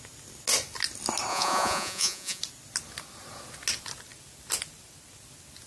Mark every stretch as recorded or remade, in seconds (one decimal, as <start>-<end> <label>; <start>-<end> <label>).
0.0-1.3 recorded; 1.3-2.4 remade; 2.4-5.7 recorded